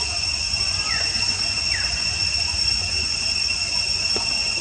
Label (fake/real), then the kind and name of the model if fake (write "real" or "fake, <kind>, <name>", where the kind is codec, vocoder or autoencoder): fake, vocoder, Vocos